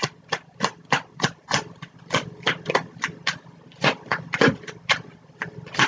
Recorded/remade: recorded